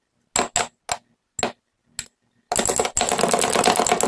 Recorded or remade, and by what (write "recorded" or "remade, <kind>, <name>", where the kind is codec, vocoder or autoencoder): recorded